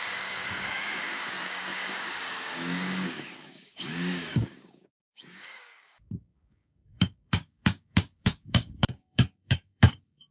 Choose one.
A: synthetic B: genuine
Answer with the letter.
A